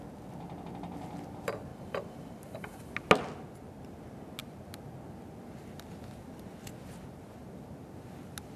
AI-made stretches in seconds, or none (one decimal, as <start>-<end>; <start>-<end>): 1.7-2.9